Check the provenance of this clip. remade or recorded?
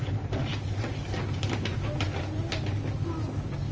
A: recorded